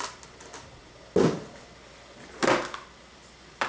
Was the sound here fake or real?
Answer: real